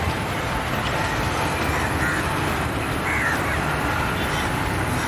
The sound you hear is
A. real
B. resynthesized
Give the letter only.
A